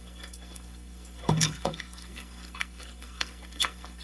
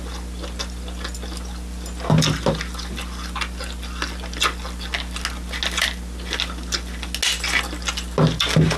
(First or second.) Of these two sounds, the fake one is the first